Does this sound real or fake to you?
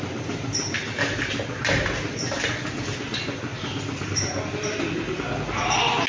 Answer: real